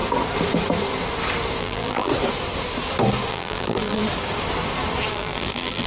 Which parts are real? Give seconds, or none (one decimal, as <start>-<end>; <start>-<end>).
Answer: 0.0-1.6; 2.1-3.3; 4.0-5.1